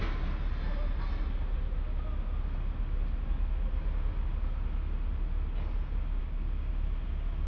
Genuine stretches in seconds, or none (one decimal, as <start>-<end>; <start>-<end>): 0.0-6.2; 6.7-7.5

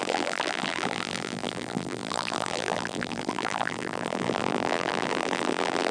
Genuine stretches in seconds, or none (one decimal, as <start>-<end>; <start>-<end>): none

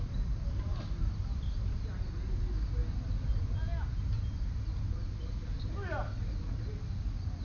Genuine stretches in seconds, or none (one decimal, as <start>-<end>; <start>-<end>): 0.0-7.4

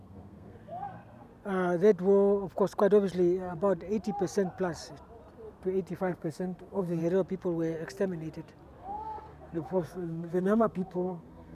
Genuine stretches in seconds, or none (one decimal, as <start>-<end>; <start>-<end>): 1.3-6.0; 7.0-8.8

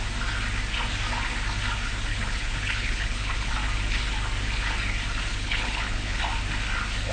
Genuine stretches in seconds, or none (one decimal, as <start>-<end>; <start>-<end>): 0.0-2.1; 3.5-5.3; 6.2-7.1

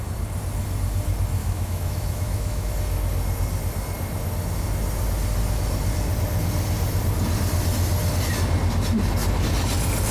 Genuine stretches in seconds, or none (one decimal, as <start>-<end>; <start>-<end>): 0.0-1.4; 2.7-10.1